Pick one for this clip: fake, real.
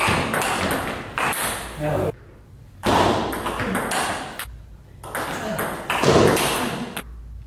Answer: real